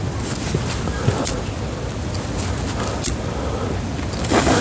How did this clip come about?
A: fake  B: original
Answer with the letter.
B